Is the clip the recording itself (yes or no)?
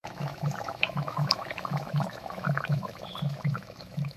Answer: no